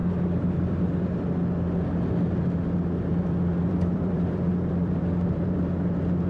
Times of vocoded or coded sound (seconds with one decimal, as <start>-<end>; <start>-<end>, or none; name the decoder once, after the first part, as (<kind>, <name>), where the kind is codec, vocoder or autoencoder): 0.0-0.8 (vocoder, BigVGAN v2); 3.1-5.6